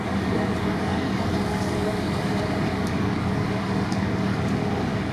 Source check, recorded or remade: remade